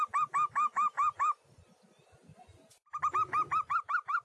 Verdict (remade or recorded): recorded